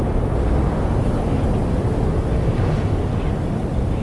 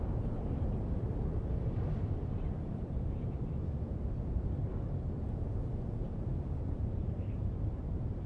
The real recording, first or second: first